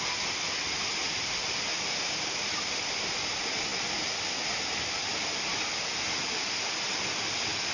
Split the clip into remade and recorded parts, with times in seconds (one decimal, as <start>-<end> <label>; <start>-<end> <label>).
0.0-1.0 recorded; 1.0-3.1 remade; 3.1-3.7 recorded; 3.7-4.6 remade; 4.6-7.7 recorded